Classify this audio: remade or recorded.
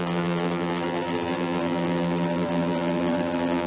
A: remade